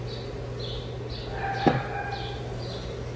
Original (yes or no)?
yes